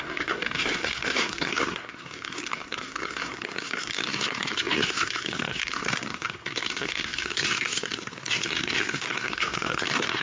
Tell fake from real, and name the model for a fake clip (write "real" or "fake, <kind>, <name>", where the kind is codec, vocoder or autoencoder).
fake, codec, SNAC